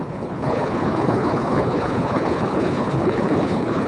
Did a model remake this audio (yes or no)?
yes